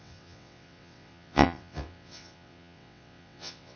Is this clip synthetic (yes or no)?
yes